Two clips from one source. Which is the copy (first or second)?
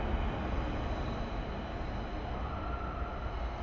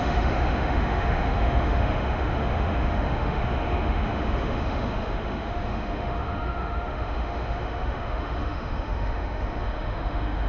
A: second